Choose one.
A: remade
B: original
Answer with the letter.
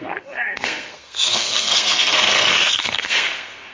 A